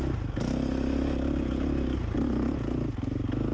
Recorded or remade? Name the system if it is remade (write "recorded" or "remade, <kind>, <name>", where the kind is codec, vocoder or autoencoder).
recorded